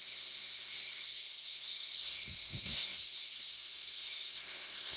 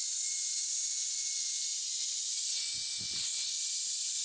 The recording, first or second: second